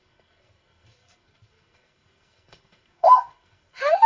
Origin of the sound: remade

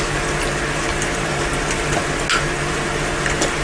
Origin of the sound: recorded